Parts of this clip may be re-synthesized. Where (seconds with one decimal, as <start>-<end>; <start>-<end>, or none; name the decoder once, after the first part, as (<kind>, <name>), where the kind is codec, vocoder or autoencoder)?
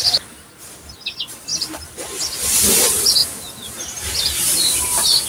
none